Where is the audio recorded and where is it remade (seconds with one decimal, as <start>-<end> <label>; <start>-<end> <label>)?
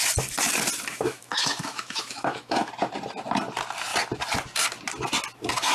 0.0-0.9 recorded; 0.9-2.7 remade; 2.7-5.7 recorded